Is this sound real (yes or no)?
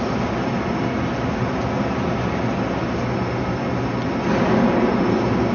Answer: yes